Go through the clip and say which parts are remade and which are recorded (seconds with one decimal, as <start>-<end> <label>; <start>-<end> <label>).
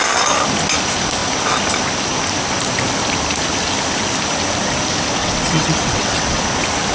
0.0-5.2 recorded; 5.2-6.4 remade; 6.4-6.9 recorded